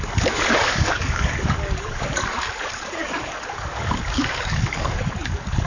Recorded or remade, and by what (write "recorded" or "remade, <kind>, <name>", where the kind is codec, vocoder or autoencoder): remade, codec, DAC